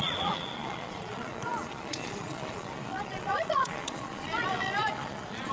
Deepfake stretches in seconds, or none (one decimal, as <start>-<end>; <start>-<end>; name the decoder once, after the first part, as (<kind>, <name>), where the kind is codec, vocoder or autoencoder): 0.0-5.5 (vocoder, Vocos)